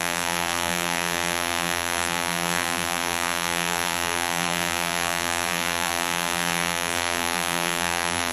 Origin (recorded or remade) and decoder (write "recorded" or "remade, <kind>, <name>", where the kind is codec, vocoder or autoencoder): remade, vocoder, BigVGAN v2